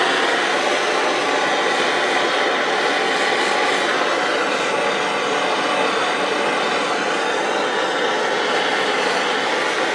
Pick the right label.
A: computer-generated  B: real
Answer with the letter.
B